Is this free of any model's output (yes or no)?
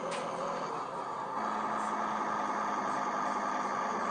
yes